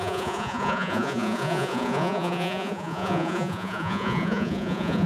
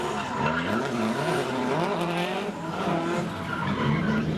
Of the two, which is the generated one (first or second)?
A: first